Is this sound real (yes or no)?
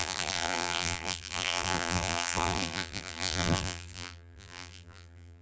no